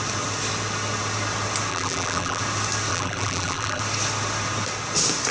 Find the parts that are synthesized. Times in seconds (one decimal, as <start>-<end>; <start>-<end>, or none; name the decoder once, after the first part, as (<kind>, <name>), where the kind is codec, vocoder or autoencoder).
1.7-2.4 (vocoder, BigVGAN v2); 2.9-3.8